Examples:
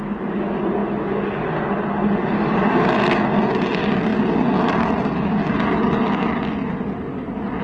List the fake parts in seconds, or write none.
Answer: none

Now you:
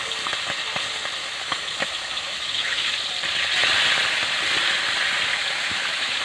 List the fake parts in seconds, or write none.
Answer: 1.2-2.9; 5.3-6.2

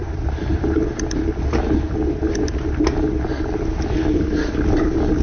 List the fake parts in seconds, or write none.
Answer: 0.0-0.8

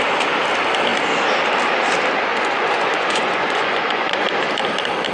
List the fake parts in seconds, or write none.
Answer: 2.3-4.2

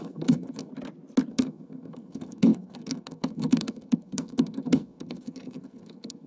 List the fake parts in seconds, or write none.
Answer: 0.0-0.7; 1.3-6.3